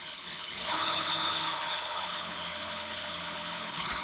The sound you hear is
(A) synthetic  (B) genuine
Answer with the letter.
A